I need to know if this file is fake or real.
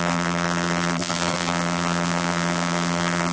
fake